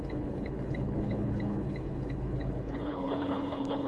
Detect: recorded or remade remade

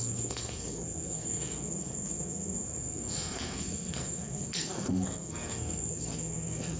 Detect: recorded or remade remade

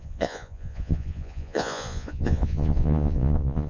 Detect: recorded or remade remade